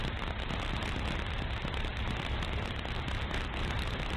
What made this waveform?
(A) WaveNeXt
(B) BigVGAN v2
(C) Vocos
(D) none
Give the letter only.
B